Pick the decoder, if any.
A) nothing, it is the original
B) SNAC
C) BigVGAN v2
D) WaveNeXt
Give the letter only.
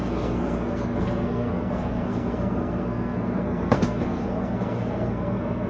B